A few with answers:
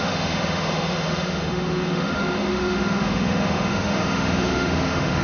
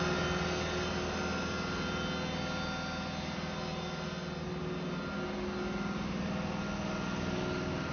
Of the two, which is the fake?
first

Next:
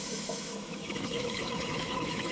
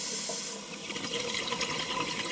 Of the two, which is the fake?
first